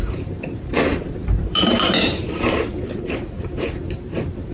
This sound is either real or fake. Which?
fake